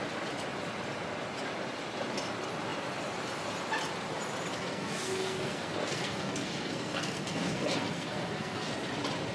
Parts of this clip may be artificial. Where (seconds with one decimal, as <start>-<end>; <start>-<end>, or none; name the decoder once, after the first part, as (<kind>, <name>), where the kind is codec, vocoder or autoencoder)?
4.5-8.7 (codec, SNAC)